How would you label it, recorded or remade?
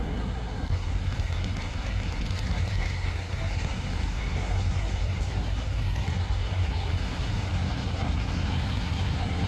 remade